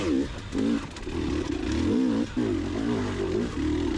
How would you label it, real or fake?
real